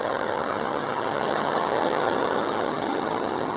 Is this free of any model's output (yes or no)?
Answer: no